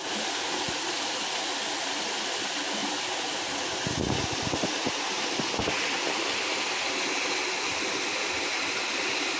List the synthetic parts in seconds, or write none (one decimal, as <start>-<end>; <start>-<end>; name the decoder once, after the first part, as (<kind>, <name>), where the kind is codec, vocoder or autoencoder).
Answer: 2.8-6.9 (vocoder, BigVGAN v2); 7.7-8.5